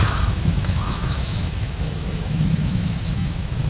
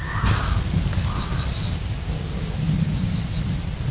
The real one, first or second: second